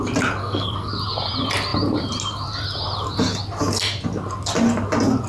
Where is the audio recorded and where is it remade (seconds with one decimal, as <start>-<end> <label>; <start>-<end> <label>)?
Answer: 0.0-0.4 recorded; 0.4-0.9 remade; 0.9-5.3 recorded